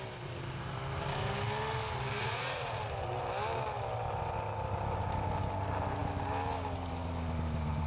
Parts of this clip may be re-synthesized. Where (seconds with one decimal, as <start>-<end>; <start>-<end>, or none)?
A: 2.2-2.8